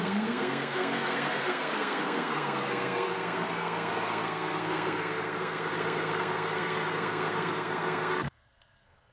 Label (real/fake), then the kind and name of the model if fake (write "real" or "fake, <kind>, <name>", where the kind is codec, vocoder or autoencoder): fake, codec, SNAC